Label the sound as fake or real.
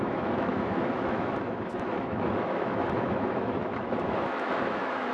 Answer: fake